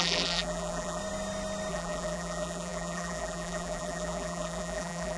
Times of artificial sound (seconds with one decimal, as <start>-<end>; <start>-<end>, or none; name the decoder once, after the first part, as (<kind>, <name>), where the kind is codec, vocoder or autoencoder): 0.0-1.0 (vocoder, BigVGAN v2); 1.7-5.2